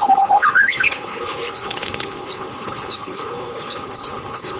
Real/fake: fake